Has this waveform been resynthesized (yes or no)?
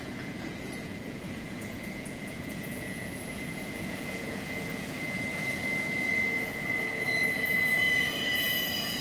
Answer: yes